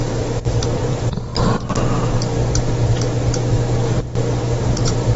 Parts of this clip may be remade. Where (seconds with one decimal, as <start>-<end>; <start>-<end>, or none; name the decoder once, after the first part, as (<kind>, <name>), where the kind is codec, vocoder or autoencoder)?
0.0-1.3 (vocoder, BigVGAN v2); 4.4-5.2